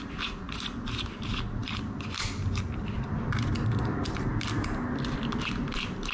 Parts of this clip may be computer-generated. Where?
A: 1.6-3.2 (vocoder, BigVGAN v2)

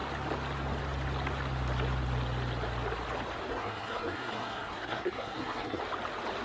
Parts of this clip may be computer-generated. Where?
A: 3.5-5.8 (codec, SNAC)